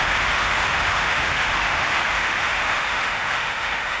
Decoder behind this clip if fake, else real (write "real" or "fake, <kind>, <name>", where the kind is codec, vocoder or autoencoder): fake, autoencoder, DAC-VAE